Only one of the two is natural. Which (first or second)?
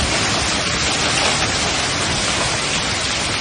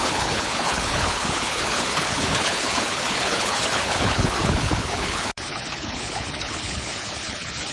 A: first